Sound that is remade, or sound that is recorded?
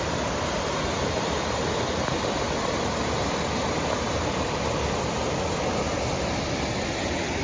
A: recorded